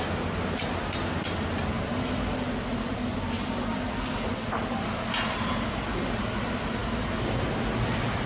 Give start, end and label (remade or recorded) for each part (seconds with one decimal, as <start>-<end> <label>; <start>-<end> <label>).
0.0-8.3 recorded